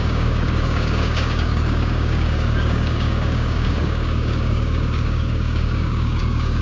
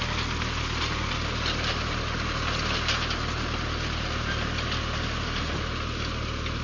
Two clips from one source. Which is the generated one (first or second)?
first